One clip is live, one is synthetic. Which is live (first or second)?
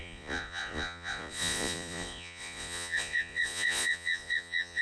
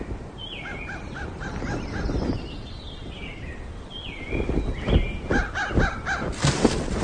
second